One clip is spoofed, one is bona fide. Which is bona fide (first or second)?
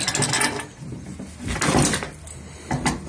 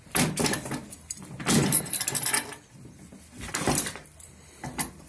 first